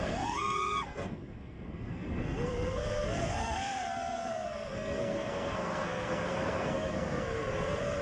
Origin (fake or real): fake